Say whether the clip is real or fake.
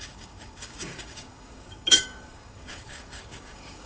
fake